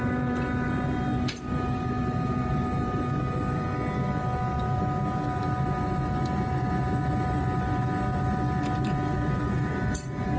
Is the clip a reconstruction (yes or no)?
yes